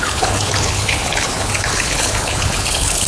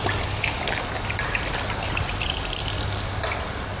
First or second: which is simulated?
first